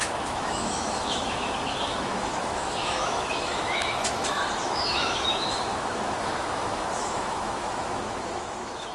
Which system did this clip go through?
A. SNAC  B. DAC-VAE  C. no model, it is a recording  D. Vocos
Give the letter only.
B